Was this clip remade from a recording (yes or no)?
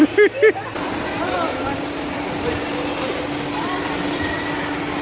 no